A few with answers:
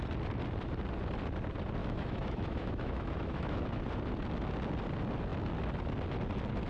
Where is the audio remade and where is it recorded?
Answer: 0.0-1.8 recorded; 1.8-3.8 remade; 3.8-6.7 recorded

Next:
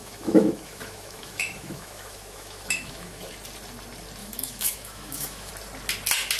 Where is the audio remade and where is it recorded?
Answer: 0.0-3.3 remade; 3.3-4.2 recorded; 4.2-5.5 remade; 5.5-6.4 recorded

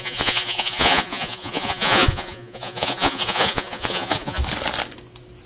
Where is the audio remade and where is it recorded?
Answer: 0.0-4.4 remade; 4.4-5.5 recorded

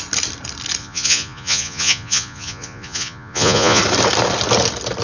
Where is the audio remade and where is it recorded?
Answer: 0.0-0.8 recorded; 0.8-3.8 remade; 3.8-5.0 recorded